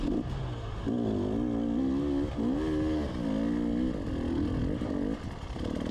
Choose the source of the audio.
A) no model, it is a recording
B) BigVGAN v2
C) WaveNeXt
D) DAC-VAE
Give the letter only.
A